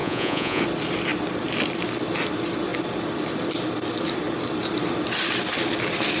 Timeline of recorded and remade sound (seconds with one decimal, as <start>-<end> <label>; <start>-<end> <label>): 0.0-0.6 remade; 0.6-6.2 recorded